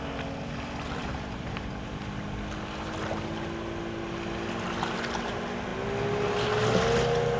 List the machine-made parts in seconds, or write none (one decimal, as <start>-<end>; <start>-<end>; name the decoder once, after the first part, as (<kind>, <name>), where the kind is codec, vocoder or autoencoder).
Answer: 1.0-1.7 (vocoder, BigVGAN v2)